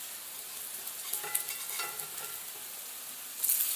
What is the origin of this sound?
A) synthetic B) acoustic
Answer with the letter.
B